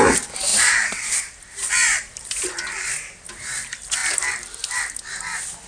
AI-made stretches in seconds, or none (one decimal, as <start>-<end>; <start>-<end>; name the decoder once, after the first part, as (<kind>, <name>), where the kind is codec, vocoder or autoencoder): 0.5-1.0 (vocoder, BigVGAN v2); 1.9-2.5